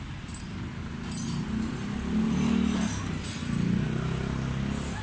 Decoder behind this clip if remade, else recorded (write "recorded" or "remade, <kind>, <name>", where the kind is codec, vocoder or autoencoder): recorded